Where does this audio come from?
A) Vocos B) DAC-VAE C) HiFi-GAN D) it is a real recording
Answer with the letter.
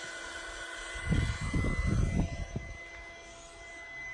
D